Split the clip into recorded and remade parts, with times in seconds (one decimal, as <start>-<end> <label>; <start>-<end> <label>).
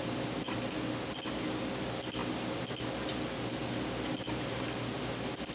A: 0.0-5.5 recorded